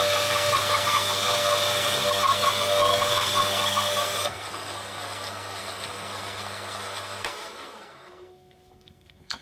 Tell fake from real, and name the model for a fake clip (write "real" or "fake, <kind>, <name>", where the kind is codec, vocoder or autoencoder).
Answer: fake, codec, SNAC